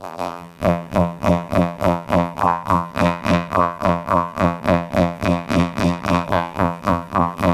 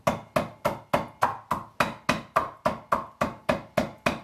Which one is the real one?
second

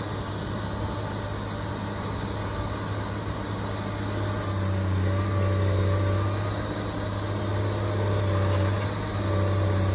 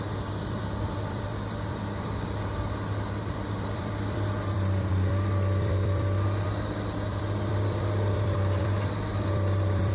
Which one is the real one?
first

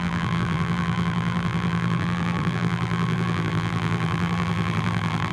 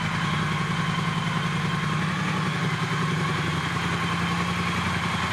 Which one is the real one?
second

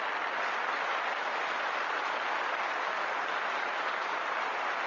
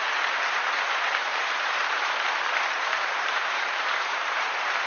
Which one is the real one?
first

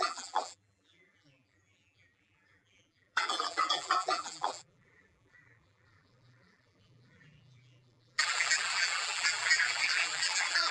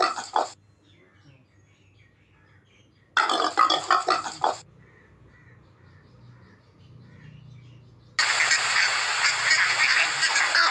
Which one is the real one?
second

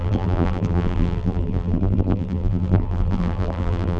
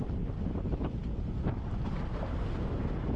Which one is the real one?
second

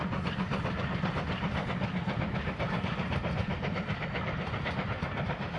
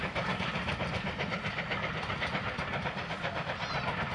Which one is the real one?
second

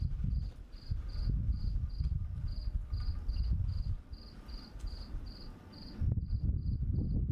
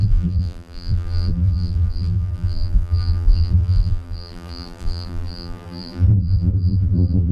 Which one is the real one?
first